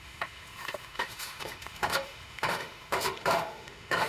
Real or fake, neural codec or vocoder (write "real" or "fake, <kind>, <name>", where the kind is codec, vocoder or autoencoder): fake, autoencoder, DAC-VAE